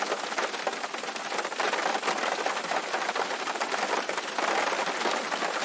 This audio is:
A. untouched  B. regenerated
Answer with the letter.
A